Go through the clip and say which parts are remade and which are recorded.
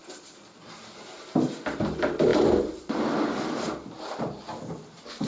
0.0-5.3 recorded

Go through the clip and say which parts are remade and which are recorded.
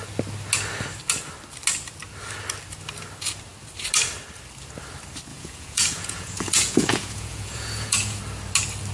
0.0-5.3 recorded; 5.3-8.2 remade; 8.2-8.9 recorded